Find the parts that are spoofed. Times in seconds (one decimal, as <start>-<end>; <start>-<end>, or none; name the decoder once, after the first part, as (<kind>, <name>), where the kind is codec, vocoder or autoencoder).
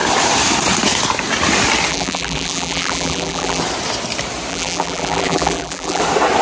1.9-3.6 (vocoder, BigVGAN v2); 4.5-6.0